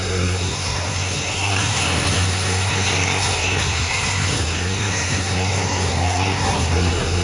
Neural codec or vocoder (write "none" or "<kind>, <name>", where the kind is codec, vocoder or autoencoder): codec, SNAC